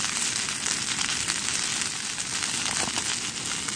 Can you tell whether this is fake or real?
real